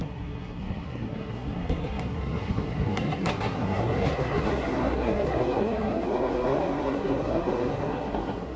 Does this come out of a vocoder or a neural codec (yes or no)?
yes